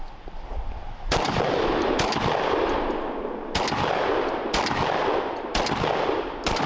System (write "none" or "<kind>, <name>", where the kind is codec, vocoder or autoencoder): none